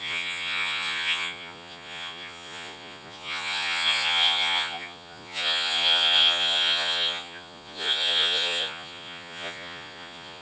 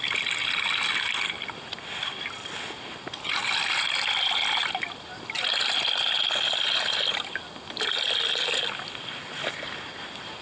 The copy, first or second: first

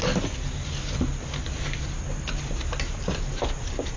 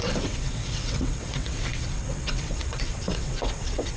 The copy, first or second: second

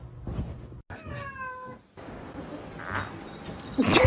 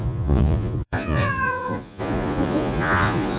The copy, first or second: second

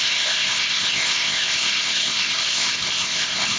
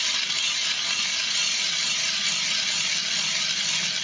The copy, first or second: first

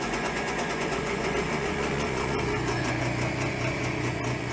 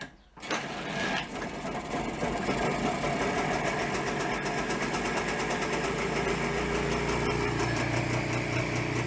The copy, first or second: first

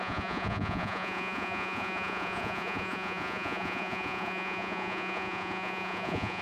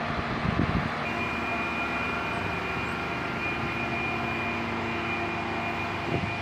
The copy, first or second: first